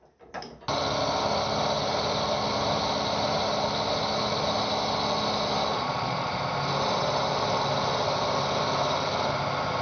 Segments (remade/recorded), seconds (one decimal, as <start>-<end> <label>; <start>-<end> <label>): 0.0-5.7 recorded; 5.7-6.3 remade; 6.3-9.8 recorded